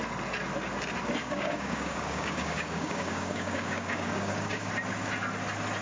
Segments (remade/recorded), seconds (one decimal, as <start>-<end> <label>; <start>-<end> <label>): 0.0-1.2 recorded; 1.2-4.7 remade; 4.7-5.8 recorded